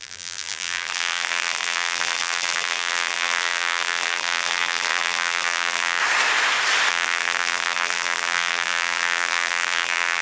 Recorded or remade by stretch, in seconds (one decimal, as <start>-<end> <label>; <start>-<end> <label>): 0.0-6.0 remade; 6.0-6.9 recorded; 6.9-10.2 remade